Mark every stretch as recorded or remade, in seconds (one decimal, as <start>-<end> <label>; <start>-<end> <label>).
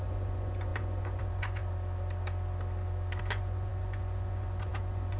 0.0-1.6 remade; 1.6-3.2 recorded; 3.2-5.2 remade